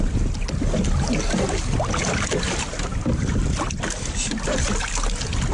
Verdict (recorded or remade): recorded